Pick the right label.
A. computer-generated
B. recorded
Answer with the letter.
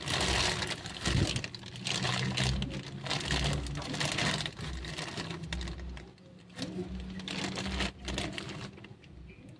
B